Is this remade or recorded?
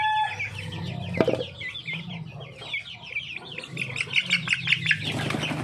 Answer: recorded